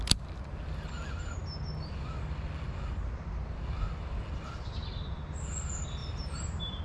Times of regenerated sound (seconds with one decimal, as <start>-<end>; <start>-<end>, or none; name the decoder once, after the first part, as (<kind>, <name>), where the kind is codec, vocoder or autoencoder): 6.0-6.8 (vocoder, BigVGAN v2)

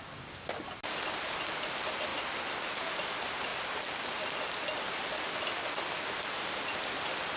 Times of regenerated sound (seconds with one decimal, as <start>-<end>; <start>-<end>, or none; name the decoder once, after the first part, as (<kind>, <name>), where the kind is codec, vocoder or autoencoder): none

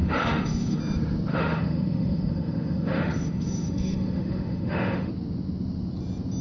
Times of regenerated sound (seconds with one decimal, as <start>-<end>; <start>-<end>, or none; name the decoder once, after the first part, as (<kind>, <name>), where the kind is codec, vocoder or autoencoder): 0.0-0.8 (autoencoder, DAC-VAE); 1.3-5.1

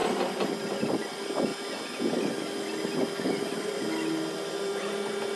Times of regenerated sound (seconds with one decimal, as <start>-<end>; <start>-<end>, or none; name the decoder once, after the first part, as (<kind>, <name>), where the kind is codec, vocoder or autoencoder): none